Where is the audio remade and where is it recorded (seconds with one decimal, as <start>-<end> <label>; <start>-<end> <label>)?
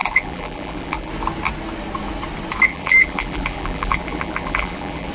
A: 0.0-1.1 remade; 1.1-2.7 recorded; 2.7-5.1 remade